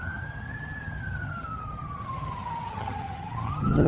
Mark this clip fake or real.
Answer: fake